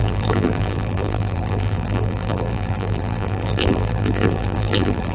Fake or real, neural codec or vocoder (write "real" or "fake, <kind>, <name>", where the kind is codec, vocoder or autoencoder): fake, vocoder, BigVGAN v2